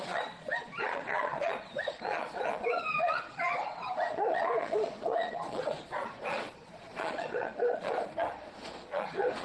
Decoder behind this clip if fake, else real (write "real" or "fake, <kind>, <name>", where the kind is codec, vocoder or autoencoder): fake, vocoder, Vocos